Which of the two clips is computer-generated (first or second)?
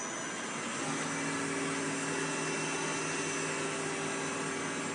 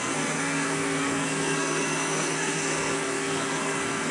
second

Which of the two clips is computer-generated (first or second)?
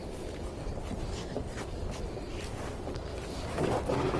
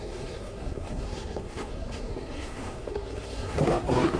second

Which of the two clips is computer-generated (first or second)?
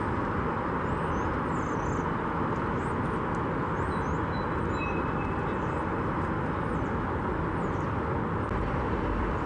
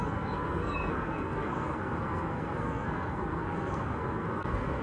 second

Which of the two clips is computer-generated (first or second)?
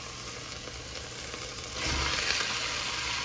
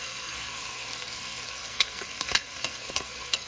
second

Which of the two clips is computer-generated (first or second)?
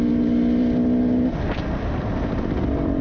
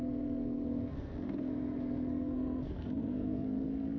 second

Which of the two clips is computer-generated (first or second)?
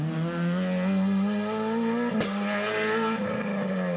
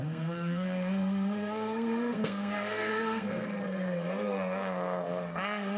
second